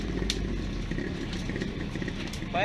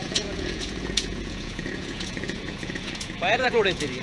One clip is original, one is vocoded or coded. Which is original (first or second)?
first